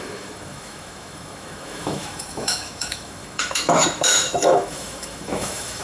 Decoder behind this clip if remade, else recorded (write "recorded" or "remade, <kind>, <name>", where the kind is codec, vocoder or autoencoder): remade, autoencoder, DAC-VAE